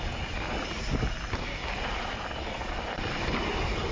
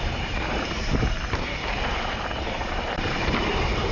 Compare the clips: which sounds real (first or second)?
first